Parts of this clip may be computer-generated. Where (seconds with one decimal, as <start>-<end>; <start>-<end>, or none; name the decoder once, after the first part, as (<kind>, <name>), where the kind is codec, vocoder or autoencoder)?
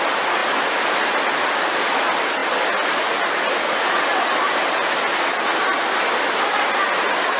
none